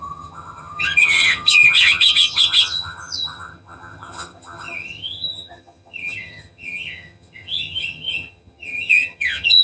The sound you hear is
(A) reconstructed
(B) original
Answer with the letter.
A